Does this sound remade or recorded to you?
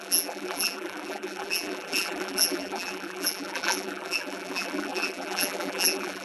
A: remade